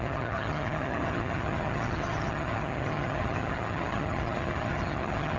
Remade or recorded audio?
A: remade